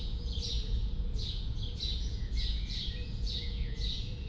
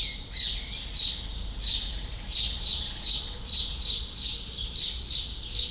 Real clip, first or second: second